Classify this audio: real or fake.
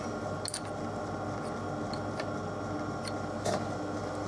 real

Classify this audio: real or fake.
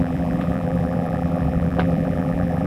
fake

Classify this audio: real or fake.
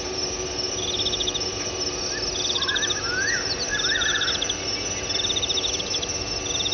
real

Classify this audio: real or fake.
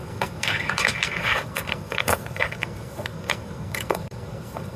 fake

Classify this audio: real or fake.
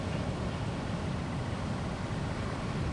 real